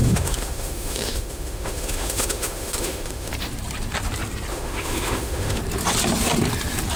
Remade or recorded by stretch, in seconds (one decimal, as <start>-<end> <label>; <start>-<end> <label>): 0.0-3.3 remade; 3.3-4.5 recorded; 4.5-5.6 remade; 5.6-7.0 recorded